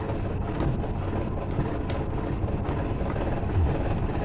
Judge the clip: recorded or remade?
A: recorded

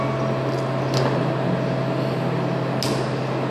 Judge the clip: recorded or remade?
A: recorded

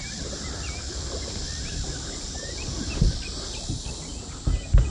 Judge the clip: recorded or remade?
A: recorded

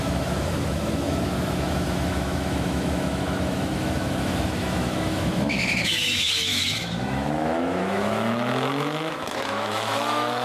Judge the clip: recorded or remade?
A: remade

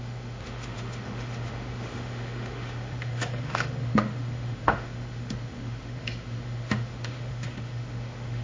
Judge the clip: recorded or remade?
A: remade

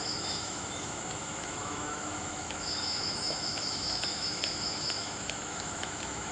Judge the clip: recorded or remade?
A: remade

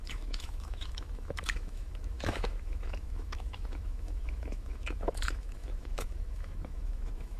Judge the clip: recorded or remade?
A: remade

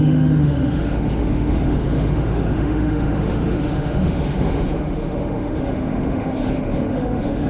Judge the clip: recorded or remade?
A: remade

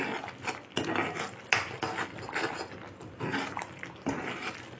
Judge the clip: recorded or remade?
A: recorded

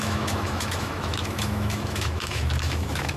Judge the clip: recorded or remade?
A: remade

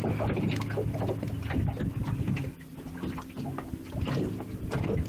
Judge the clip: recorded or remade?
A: recorded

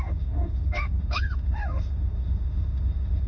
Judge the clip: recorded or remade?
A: remade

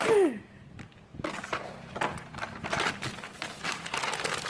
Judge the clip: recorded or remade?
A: recorded